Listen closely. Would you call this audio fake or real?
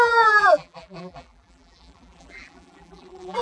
fake